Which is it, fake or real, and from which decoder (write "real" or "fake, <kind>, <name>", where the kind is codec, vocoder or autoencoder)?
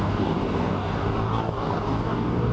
fake, codec, DAC